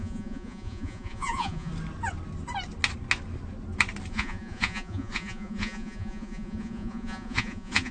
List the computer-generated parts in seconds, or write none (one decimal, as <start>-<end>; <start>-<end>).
0.0-1.7; 4.1-7.9